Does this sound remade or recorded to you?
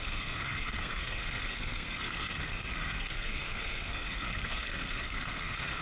remade